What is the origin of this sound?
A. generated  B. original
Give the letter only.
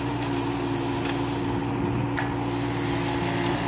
B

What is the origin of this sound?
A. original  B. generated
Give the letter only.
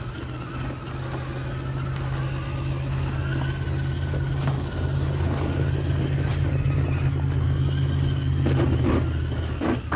A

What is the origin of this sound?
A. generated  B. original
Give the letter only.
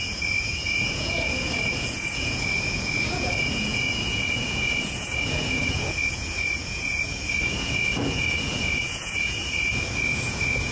A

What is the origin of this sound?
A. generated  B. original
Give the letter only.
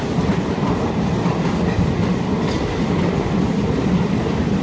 B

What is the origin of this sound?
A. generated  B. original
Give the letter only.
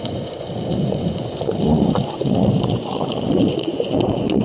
A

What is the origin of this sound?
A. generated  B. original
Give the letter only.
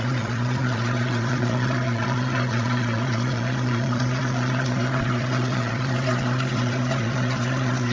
A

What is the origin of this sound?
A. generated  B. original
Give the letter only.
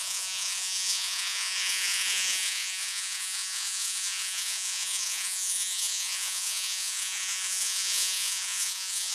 A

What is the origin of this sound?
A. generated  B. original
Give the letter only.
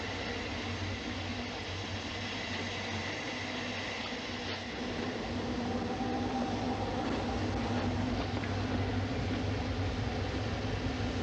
B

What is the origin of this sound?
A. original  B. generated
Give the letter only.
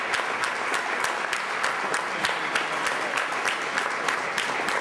A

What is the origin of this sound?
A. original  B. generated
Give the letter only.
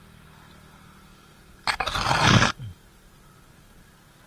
A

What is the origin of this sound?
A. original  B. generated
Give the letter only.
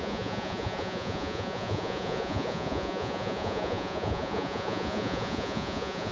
B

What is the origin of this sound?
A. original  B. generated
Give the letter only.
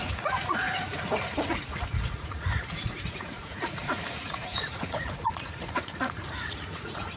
B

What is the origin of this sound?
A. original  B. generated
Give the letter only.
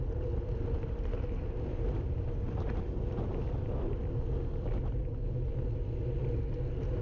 A